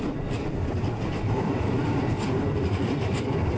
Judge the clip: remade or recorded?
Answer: remade